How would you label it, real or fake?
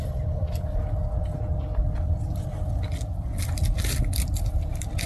real